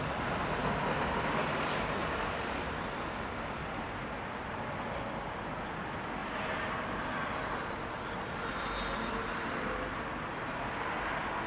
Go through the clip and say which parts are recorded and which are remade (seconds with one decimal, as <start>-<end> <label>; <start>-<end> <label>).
0.0-2.0 recorded; 2.0-2.7 remade; 2.7-6.2 recorded; 6.2-11.1 remade; 11.1-11.5 recorded